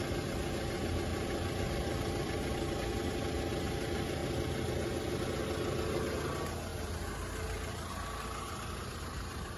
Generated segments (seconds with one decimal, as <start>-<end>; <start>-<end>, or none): 1.1-2.7